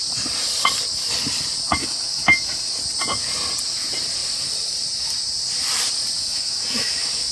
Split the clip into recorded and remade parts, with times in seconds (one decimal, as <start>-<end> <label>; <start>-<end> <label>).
0.0-1.8 recorded; 1.8-2.7 remade; 2.7-6.2 recorded; 6.2-7.3 remade